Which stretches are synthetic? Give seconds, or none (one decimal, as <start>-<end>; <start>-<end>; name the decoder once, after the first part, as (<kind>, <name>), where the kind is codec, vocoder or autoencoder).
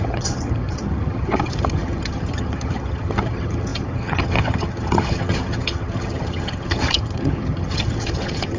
0.0-8.6 (vocoder, HiFi-GAN)